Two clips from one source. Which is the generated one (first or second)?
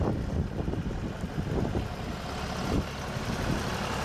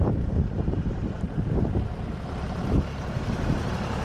second